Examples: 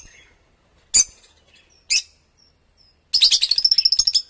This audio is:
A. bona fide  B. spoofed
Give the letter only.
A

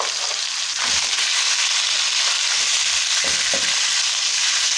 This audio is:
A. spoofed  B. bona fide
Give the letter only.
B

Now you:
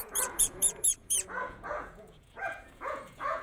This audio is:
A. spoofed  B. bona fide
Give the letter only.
A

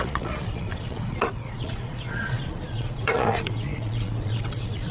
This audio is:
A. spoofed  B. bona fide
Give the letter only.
A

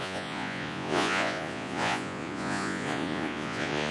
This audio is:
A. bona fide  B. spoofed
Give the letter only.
B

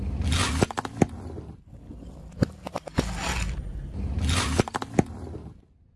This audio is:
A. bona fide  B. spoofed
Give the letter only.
A